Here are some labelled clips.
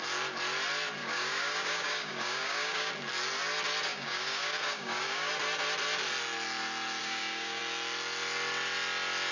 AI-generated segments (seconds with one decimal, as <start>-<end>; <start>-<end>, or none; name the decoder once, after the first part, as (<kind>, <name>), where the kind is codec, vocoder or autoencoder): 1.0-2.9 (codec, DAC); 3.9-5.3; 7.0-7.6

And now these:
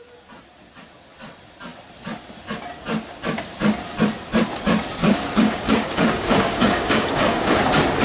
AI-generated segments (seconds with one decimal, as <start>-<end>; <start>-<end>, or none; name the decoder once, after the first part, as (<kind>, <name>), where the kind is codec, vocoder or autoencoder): 5.0-7.5 (codec, DAC)

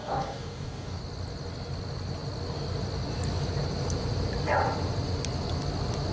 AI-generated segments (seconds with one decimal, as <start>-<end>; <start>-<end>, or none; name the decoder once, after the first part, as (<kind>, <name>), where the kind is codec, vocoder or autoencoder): 0.0-1.0 (codec, DAC)